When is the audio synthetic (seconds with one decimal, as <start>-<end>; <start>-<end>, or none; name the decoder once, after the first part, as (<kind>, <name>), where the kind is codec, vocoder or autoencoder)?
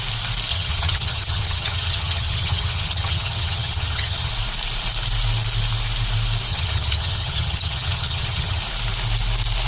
0.5-4.3 (vocoder, HiFi-GAN); 6.5-8.6